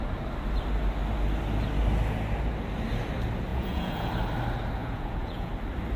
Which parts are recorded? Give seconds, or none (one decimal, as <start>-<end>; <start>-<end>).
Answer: 0.0-3.5; 4.1-4.8; 5.5-6.0

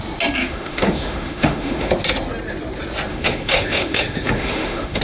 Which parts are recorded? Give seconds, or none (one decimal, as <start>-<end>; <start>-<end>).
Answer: 0.0-0.4; 1.9-3.1